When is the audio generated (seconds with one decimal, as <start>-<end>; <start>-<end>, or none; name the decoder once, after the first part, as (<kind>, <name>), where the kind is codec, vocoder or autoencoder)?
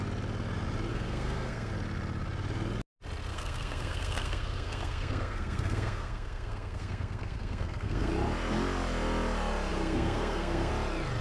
0.9-1.7 (codec, SNAC); 3.3-8.1; 9.7-10.7